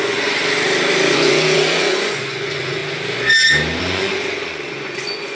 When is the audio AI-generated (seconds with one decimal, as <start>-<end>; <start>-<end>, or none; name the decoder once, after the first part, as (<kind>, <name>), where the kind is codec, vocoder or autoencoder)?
0.0-0.4 (vocoder, Vocos); 1.1-2.8; 3.8-5.3